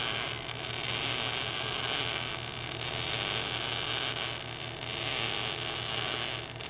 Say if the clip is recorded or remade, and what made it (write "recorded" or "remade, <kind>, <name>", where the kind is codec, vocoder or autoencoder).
recorded